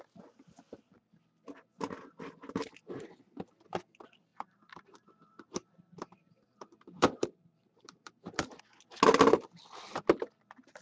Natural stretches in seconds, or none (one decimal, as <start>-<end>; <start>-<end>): 0.0-4.3; 8.6-10.8